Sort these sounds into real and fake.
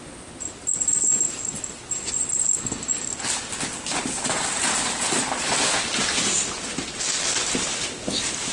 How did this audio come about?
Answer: real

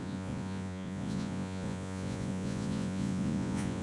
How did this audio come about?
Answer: fake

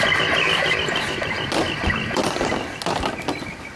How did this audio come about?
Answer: real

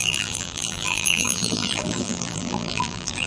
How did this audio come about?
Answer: fake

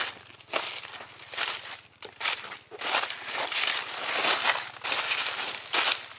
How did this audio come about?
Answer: real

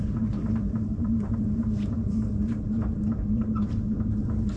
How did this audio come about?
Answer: fake